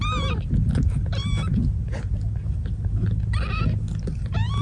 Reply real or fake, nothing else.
real